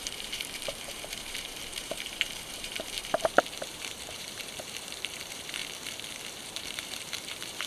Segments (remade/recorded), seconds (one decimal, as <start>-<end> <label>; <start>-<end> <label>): 0.0-5.6 remade; 5.6-6.2 recorded; 6.2-7.7 remade